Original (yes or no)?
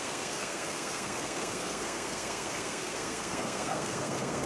no